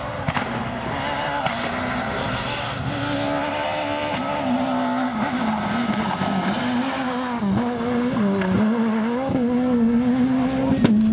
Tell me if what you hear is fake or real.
real